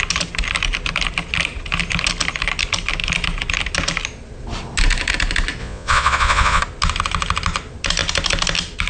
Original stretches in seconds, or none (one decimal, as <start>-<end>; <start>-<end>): 0.0-5.6; 6.6-8.9